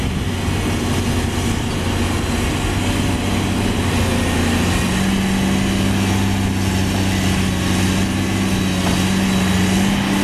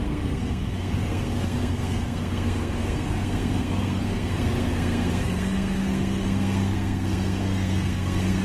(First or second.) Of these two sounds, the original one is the first